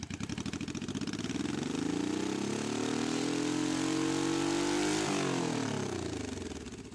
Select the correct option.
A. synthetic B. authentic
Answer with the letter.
B